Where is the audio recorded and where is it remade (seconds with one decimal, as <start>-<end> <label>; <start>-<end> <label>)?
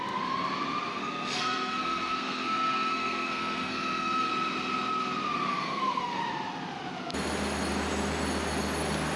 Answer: 0.0-0.9 recorded; 0.9-4.3 remade; 4.3-5.5 recorded; 5.5-6.2 remade; 6.2-9.2 recorded